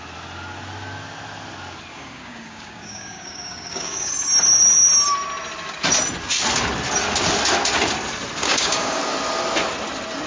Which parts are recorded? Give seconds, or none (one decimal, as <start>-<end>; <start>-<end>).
0.0-1.9; 4.1-8.4; 9.0-10.3